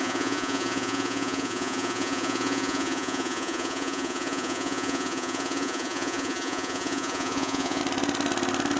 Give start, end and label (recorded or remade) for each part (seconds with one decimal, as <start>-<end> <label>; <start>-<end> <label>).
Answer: 0.0-7.8 remade; 7.8-8.8 recorded